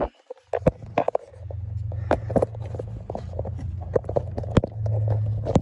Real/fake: real